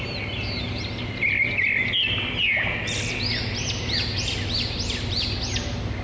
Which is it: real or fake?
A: real